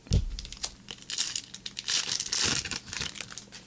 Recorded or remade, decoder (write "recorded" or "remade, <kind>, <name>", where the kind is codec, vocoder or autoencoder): recorded